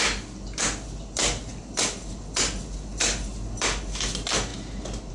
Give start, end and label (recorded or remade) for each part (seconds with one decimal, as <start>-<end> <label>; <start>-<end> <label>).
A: 0.0-5.1 recorded